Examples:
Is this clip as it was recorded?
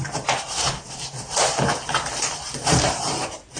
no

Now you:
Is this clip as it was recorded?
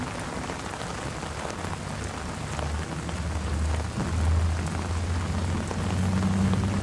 yes